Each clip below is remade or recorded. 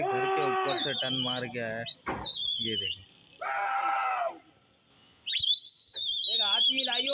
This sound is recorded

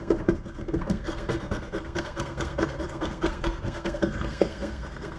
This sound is remade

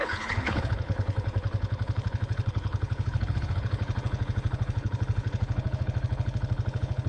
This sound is remade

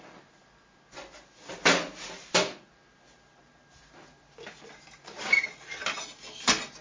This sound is recorded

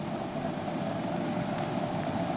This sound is recorded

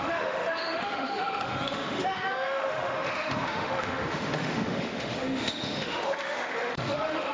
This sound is remade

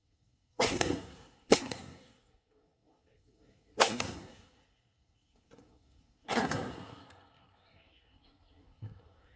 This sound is remade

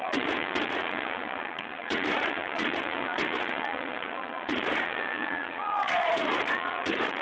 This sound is remade